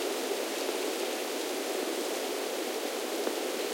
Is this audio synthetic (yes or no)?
no